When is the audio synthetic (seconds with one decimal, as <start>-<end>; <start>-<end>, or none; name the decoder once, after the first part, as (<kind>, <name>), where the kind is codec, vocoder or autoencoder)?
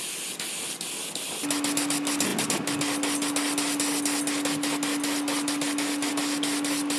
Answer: none